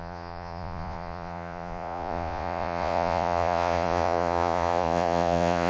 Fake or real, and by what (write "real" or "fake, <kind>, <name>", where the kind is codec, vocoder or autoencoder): fake, vocoder, Vocos